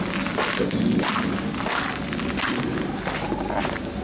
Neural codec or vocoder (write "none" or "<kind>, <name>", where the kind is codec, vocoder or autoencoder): none